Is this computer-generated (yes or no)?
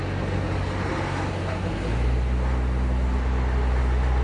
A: no